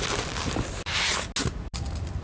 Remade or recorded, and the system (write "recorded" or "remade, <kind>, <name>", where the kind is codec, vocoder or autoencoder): recorded